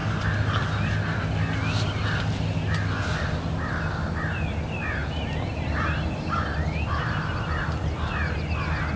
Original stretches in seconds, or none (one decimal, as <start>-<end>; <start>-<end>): 0.0-5.0; 5.5-9.0